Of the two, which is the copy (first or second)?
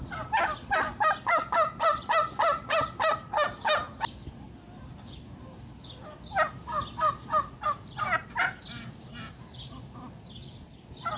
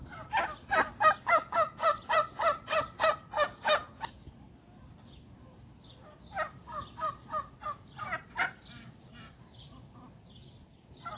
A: second